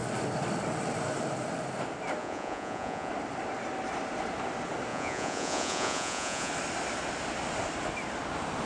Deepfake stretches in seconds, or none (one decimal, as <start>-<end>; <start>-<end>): 2.2-3.1; 4.9-6.5